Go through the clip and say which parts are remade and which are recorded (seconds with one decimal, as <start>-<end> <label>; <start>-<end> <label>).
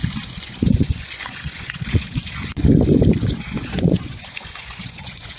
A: 0.0-2.6 remade; 2.6-3.2 recorded; 3.2-5.4 remade